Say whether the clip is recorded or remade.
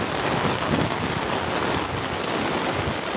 recorded